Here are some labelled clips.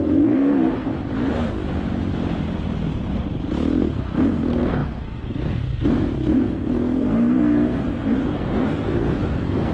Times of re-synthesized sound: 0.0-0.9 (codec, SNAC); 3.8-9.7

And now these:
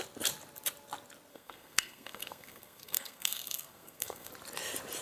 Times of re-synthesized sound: 1.3-4.3 (codec, SNAC)

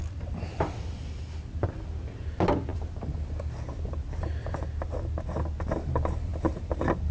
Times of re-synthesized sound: none

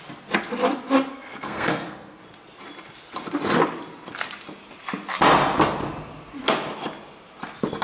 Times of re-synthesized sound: 1.1-2.2 (codec, SNAC)

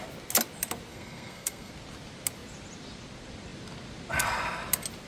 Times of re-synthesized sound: 0.9-1.7 (codec, SNAC)